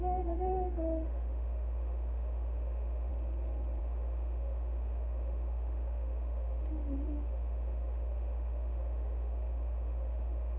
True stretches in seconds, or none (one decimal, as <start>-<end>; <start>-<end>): 3.1-3.8